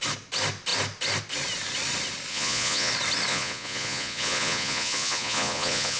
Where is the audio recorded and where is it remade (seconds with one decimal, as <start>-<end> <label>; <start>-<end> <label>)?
0.0-2.3 recorded; 2.3-2.9 remade; 2.9-3.3 recorded; 3.3-6.0 remade